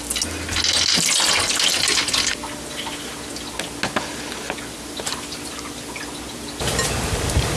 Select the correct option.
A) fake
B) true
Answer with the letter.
B